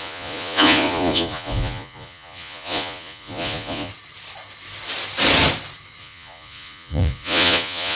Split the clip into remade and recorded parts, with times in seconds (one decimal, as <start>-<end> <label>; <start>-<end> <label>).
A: 0.0-3.9 remade; 3.9-6.0 recorded; 6.0-8.0 remade